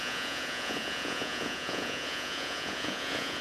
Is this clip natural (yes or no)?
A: no